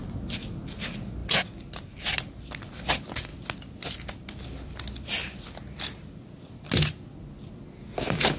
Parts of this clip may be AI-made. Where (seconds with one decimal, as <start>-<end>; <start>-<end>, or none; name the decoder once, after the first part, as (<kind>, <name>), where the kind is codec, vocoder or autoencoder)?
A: none